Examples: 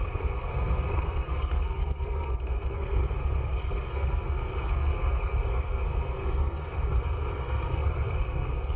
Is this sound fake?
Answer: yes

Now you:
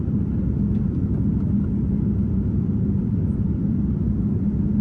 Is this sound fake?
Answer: no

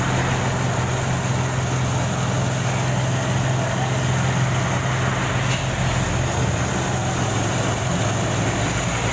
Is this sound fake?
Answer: no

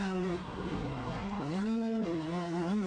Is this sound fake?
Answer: yes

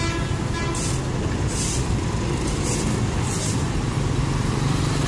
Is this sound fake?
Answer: no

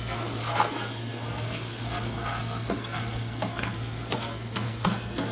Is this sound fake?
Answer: yes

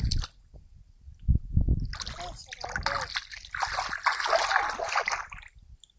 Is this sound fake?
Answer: no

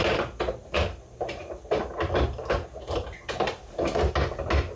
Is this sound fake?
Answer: no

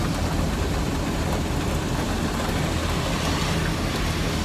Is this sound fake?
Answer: no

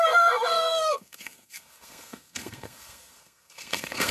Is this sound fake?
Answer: yes